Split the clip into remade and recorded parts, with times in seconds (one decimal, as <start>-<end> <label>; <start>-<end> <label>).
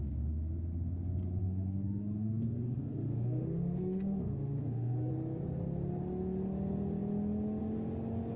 0.0-1.4 recorded; 1.4-5.1 remade; 5.1-8.4 recorded